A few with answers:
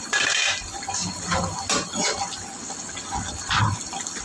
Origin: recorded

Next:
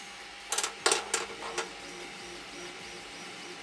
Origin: recorded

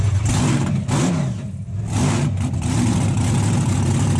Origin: recorded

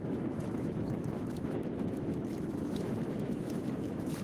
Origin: remade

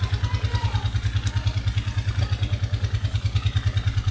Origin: recorded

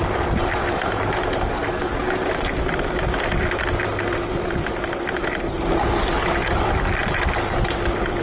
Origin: recorded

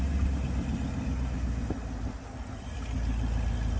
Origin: recorded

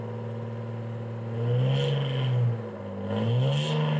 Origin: recorded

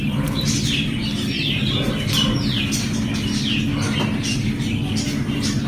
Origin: recorded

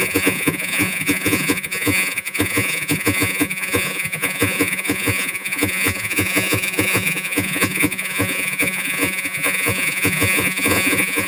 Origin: remade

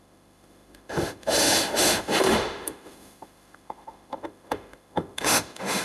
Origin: remade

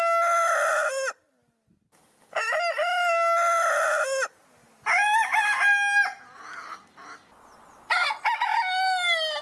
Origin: recorded